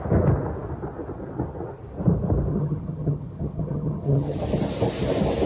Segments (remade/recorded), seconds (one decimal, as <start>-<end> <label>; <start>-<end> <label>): 0.0-2.5 recorded; 2.5-4.4 remade; 4.4-5.5 recorded